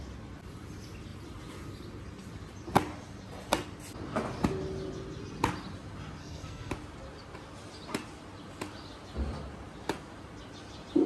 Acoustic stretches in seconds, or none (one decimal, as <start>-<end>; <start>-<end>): 0.0-6.2; 6.7-11.1